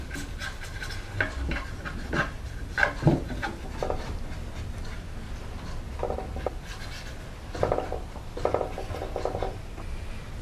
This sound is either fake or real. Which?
real